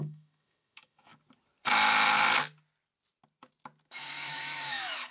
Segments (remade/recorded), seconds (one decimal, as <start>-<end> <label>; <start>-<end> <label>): 0.0-1.1 remade; 1.1-3.9 recorded; 3.9-5.1 remade